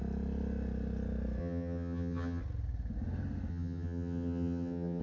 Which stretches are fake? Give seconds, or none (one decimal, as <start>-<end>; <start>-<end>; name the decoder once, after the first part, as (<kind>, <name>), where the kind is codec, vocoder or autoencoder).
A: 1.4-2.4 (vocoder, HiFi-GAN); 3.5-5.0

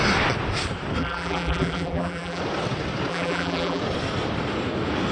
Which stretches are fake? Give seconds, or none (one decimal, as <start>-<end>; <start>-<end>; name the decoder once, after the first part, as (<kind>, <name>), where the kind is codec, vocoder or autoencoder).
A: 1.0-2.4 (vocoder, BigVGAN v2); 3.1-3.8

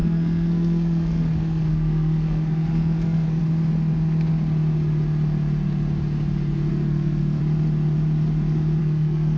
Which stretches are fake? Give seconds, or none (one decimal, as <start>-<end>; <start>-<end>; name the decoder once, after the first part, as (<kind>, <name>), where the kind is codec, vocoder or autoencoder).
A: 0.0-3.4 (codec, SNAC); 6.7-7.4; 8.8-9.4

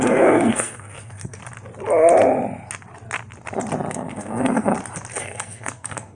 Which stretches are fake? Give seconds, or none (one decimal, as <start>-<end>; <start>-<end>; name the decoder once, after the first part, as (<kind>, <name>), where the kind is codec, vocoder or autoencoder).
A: 0.0-1.4 (codec, SNAC); 3.9-4.7; 5.2-6.1

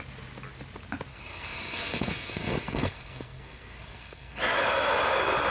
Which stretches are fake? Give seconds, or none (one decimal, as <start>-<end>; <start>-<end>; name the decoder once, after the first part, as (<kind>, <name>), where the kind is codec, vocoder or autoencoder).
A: 1.1-4.4 (codec, SNAC)

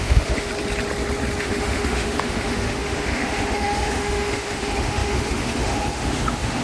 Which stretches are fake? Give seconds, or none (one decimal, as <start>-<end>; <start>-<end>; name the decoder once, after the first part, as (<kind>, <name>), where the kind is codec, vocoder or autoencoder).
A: 0.0-0.5 (autoencoder, DAC-VAE); 1.4-6.6